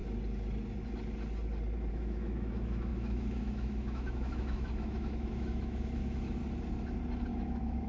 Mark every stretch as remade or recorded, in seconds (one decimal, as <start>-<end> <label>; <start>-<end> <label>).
0.0-1.9 recorded; 1.9-6.4 remade; 6.4-7.3 recorded; 7.3-7.9 remade